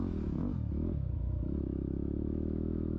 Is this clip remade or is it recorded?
remade